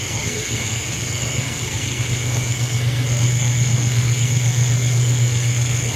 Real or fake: fake